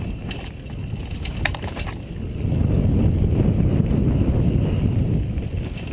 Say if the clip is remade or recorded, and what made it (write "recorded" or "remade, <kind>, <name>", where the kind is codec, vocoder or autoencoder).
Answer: recorded